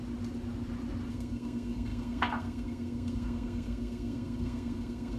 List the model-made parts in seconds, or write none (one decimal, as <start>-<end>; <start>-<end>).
1.1-5.2

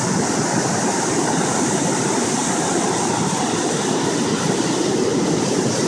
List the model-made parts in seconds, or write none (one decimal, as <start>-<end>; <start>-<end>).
0.0-5.9

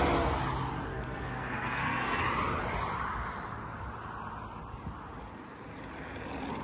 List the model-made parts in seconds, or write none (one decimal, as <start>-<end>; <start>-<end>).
0.9-2.2

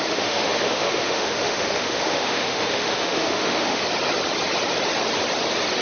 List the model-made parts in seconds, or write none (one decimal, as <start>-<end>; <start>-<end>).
0.0-3.8